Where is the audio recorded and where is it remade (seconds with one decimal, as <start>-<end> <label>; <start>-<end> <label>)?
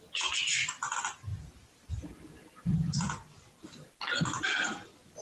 0.0-5.2 recorded